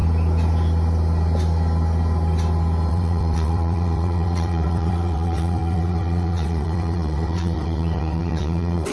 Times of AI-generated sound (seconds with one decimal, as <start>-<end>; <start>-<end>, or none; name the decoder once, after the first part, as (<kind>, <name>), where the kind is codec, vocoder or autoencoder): 2.9-8.9 (vocoder, WaveNeXt)